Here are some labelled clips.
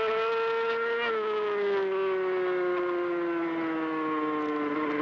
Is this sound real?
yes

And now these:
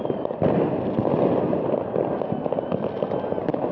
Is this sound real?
yes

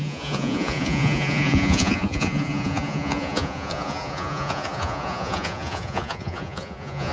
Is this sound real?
no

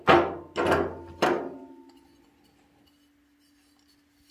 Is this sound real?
yes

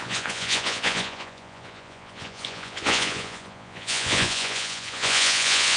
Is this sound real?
no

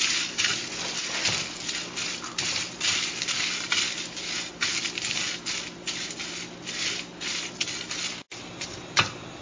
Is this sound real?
yes